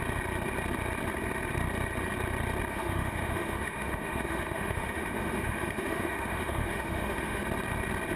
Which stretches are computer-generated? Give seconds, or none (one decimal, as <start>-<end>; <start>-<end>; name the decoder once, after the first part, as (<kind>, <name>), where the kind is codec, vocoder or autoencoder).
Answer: 2.7-7.4 (autoencoder, DAC-VAE)